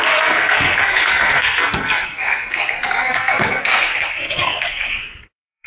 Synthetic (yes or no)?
yes